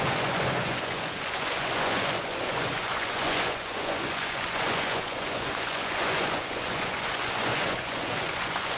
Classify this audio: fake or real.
fake